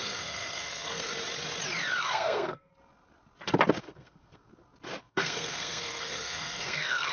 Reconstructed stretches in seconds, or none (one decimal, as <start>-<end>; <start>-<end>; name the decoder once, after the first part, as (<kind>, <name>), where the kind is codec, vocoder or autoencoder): 0.0-1.1 (codec, SNAC); 2.0-2.7; 3.8-4.5; 5.0-7.1